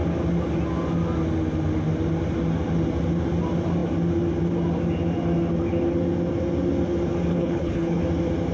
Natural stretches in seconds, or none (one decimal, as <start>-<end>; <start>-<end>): 0.0-7.3; 8.0-8.5